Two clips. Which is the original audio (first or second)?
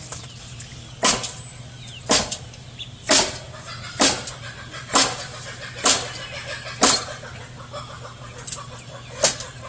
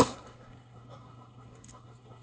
first